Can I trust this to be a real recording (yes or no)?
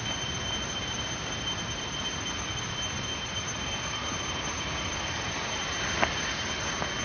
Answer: yes